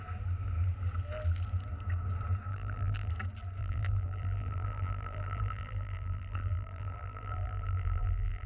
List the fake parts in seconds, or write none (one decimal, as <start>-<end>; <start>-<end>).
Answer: 2.5-3.1; 3.6-8.5